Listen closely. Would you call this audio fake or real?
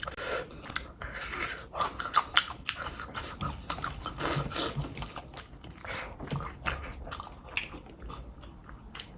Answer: real